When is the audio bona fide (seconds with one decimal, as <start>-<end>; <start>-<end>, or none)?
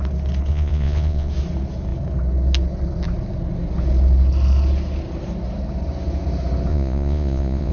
0.0-0.5; 1.3-6.7